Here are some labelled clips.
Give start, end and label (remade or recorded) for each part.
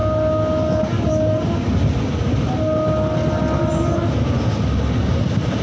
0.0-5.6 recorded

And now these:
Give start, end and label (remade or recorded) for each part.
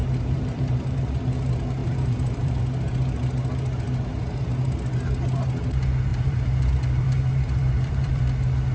0.0-1.2 remade; 1.2-1.8 recorded; 1.8-2.6 remade; 2.6-4.1 recorded; 4.1-4.6 remade; 4.6-6.1 recorded; 6.1-8.2 remade; 8.2-8.7 recorded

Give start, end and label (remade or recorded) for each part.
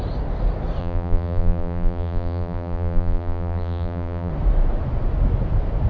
0.0-0.8 recorded; 0.8-4.3 remade; 4.3-5.9 recorded